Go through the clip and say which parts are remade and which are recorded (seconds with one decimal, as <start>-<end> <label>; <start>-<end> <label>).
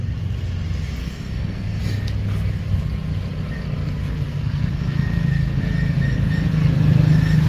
0.0-1.0 recorded; 1.0-1.8 remade; 1.8-4.0 recorded; 4.0-5.6 remade; 5.6-7.5 recorded